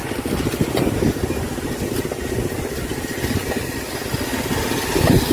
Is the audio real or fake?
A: real